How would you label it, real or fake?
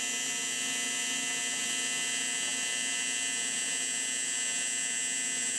real